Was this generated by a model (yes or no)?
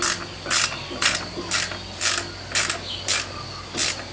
no